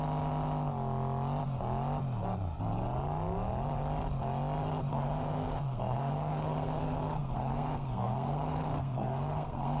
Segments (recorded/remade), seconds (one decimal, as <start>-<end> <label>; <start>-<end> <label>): 0.0-4.9 recorded; 4.9-9.8 remade